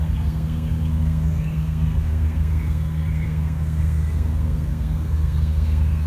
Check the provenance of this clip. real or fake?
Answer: fake